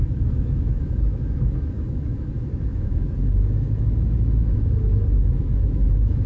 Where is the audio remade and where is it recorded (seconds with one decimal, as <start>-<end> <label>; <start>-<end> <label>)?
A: 0.0-6.3 remade